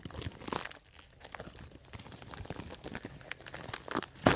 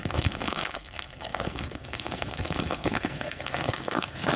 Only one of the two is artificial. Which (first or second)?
second